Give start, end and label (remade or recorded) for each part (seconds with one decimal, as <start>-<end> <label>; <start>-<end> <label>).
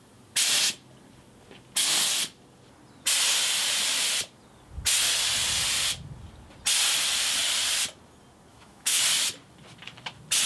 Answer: 0.0-8.5 recorded; 8.5-9.0 remade; 9.0-10.5 recorded